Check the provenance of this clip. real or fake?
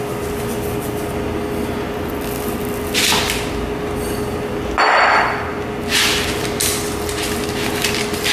real